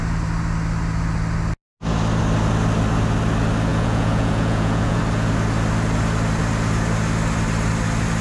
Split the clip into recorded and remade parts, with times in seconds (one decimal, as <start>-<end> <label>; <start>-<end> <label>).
0.0-3.7 recorded; 3.7-5.0 remade; 5.0-8.2 recorded